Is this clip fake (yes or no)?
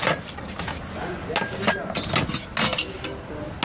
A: no